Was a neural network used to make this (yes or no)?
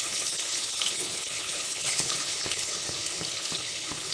yes